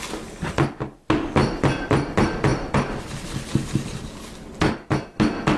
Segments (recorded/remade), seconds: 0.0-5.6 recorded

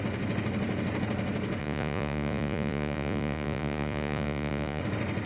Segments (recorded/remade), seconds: 0.0-1.6 recorded; 1.6-4.8 remade; 4.8-5.3 recorded

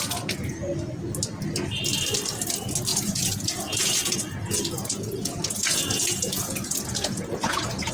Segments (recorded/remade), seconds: 0.0-2.9 recorded; 2.9-7.9 remade

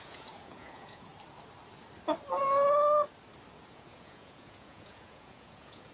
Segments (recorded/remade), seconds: 0.0-1.1 remade; 1.1-3.7 recorded; 3.7-5.9 remade

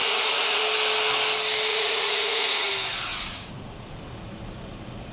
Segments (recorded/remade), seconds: 0.0-0.6 remade; 0.6-1.7 recorded; 1.7-2.7 remade; 2.7-3.1 recorded; 3.1-4.0 remade; 4.0-5.1 recorded

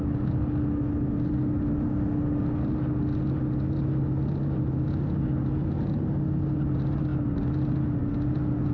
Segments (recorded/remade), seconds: 0.0-8.7 recorded